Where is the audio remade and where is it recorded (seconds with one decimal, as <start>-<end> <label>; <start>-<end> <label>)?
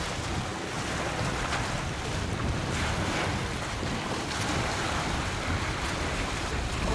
0.0-6.9 recorded